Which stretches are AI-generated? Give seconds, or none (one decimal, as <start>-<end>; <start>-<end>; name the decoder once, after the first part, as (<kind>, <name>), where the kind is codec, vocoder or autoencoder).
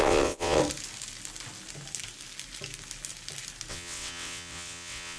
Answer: 0.0-0.6 (vocoder, WaveNeXt); 3.7-5.2